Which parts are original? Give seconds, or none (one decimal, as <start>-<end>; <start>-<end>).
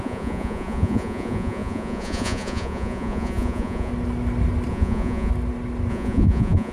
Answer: 3.9-4.7; 5.3-5.9